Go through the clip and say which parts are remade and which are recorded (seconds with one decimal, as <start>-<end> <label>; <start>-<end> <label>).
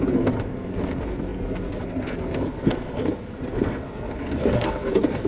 0.0-5.3 remade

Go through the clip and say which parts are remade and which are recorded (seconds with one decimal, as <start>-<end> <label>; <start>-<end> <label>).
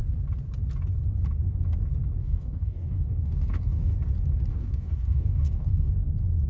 0.0-2.2 recorded; 2.2-3.9 remade; 3.9-4.5 recorded; 4.5-5.9 remade; 5.9-6.5 recorded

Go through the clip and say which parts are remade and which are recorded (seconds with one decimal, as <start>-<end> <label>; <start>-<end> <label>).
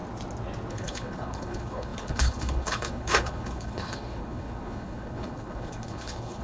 0.0-0.7 recorded; 0.7-6.4 remade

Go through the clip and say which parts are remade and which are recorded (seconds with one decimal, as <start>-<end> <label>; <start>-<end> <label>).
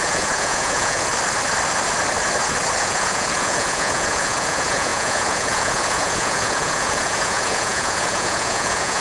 0.0-1.1 remade; 1.1-2.8 recorded; 2.8-9.0 remade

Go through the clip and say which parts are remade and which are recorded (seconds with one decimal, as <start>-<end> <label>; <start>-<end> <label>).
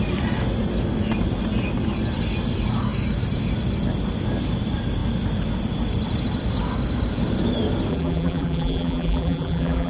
0.0-7.9 recorded; 7.9-9.9 remade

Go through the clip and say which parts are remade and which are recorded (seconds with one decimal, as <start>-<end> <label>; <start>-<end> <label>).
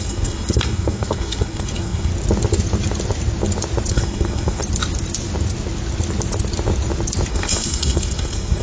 0.0-2.1 remade; 2.1-3.9 recorded; 3.9-4.6 remade; 4.6-7.3 recorded; 7.3-8.6 remade